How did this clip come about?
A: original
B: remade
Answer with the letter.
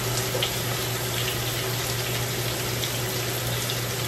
A